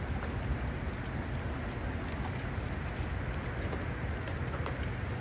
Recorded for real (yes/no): yes